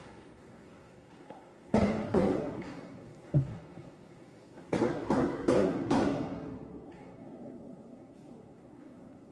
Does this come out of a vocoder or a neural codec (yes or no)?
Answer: yes